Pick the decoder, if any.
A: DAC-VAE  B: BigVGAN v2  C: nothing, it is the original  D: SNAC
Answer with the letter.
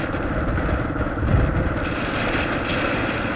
C